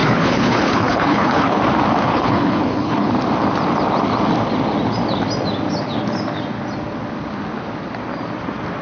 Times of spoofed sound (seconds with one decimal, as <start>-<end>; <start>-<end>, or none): 0.0-1.6; 2.1-3.1